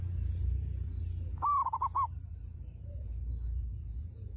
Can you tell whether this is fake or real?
real